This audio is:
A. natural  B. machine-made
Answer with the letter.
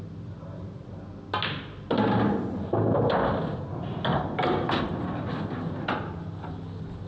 A